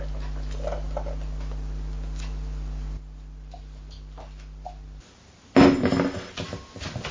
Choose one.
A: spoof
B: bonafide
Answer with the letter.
B